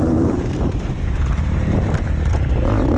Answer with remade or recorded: remade